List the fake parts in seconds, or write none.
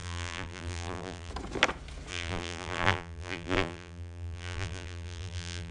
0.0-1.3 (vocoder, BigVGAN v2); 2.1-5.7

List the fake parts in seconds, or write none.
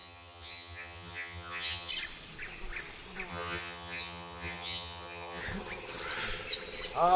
0.0-1.9 (vocoder, HiFi-GAN); 3.3-5.4